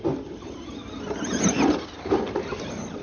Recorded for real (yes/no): yes